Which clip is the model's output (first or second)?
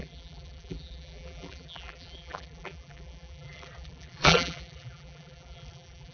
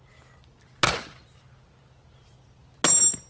first